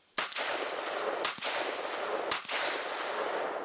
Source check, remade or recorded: recorded